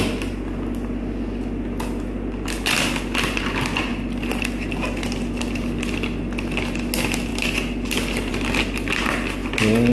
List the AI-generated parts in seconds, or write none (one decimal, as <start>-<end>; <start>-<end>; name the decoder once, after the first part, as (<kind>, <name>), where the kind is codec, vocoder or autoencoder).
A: none